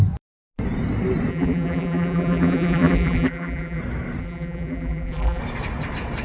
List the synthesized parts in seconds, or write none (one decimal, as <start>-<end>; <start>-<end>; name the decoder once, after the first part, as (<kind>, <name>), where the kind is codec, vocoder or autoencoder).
1.3-3.8 (vocoder, BigVGAN v2); 4.2-5.4